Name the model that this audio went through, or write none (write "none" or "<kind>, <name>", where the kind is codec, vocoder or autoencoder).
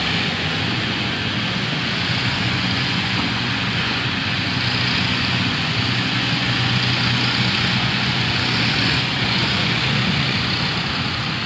vocoder, Vocos